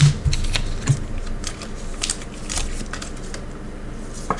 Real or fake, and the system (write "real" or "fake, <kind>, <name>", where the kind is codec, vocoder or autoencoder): real